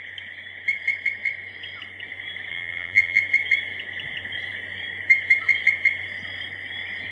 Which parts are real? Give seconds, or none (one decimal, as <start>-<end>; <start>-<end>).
0.0-2.5; 3.2-7.1